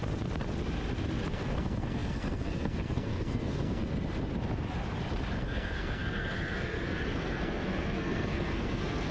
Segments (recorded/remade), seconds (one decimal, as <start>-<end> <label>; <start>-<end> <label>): 0.0-1.3 recorded; 1.3-3.8 remade; 3.8-5.4 recorded; 5.4-9.1 remade